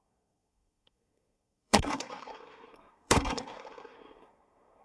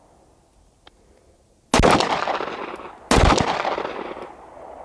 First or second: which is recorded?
second